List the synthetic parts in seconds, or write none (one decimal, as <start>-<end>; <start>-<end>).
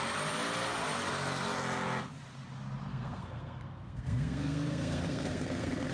2.9-5.9